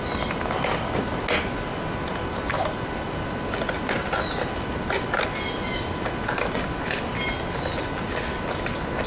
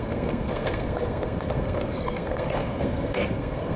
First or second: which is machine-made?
second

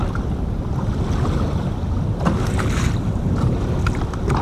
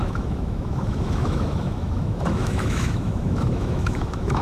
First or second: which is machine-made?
second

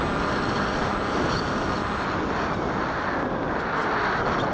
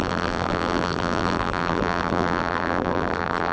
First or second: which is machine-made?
second